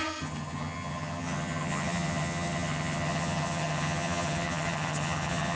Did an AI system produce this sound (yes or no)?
yes